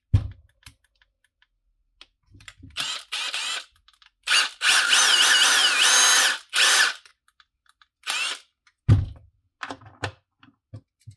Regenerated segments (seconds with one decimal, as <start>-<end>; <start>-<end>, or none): none